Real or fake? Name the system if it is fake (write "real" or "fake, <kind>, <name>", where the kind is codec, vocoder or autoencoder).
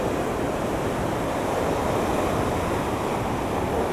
real